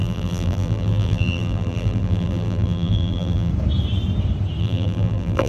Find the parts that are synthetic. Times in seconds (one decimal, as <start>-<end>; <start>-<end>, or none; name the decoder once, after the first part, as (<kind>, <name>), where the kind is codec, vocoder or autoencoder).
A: 0.0-3.5 (vocoder, BigVGAN v2); 4.6-5.5